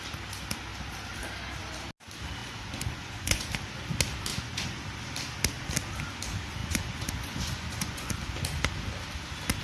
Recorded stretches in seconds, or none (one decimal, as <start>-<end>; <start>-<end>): 0.0-2.4; 3.5-4.3; 4.8-6.6; 8.1-9.6